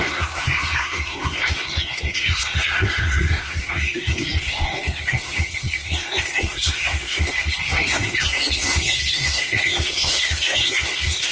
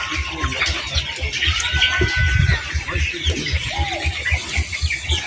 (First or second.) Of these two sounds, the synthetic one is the first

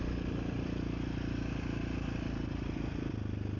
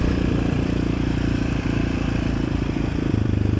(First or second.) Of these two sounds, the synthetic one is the second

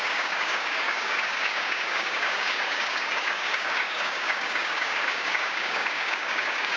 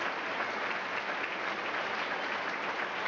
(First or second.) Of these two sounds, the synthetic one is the first